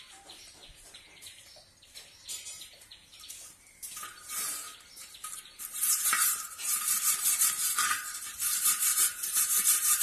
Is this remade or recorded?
remade